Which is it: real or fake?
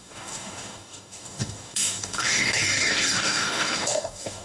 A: fake